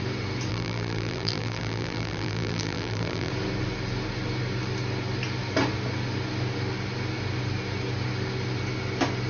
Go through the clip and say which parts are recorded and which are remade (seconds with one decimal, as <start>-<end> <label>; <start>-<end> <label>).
0.0-0.5 recorded; 0.5-3.3 remade; 3.3-9.3 recorded